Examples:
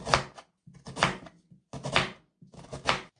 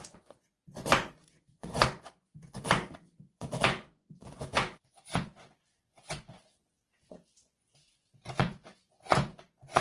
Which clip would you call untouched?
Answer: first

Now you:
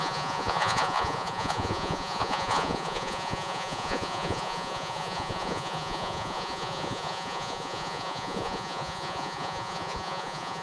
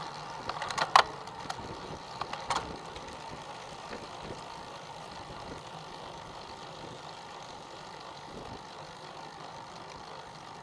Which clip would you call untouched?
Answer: second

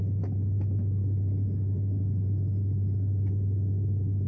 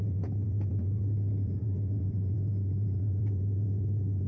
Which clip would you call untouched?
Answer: first